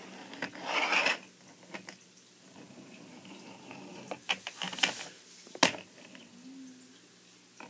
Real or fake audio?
real